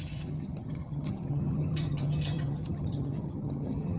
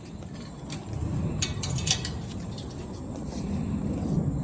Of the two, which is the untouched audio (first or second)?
second